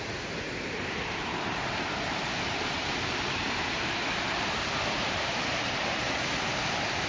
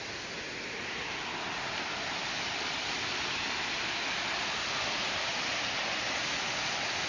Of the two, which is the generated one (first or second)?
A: first